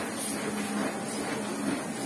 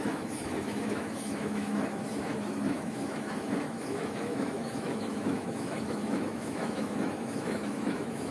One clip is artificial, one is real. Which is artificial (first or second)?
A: second